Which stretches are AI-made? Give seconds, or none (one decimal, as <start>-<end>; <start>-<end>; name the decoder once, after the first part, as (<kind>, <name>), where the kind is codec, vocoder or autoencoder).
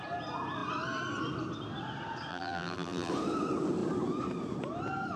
2.3-3.1 (vocoder, BigVGAN v2)